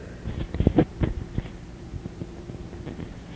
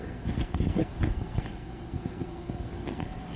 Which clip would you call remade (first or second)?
second